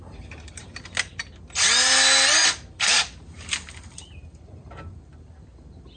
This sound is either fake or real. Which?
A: real